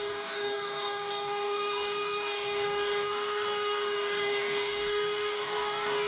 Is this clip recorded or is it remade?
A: remade